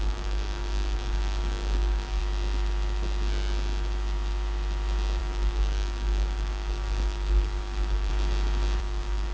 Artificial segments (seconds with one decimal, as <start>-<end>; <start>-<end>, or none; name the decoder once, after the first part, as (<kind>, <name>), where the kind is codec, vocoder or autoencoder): 0.0-2.2 (codec, DAC); 5.2-8.1; 8.8-9.3